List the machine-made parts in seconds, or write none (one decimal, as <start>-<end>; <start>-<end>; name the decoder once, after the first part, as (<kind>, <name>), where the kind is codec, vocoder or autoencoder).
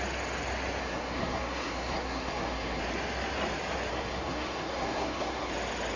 0.8-2.8 (codec, SNAC); 3.9-5.5